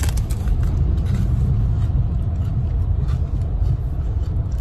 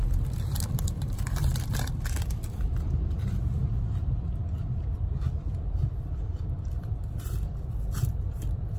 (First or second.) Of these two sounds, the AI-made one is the second